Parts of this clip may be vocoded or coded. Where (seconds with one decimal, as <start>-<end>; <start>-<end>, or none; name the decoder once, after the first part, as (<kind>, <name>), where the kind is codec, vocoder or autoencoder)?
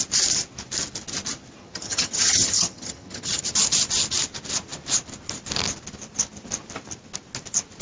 1.6-3.4 (vocoder, HiFi-GAN)